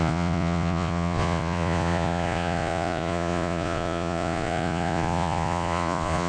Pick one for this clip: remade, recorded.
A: remade